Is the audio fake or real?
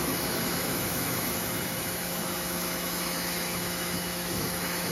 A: fake